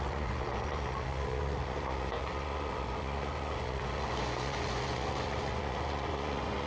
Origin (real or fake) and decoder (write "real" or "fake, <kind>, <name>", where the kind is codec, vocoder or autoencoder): fake, vocoder, Vocos